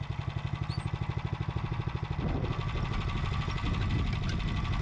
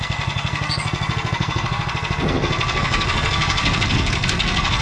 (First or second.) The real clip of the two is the first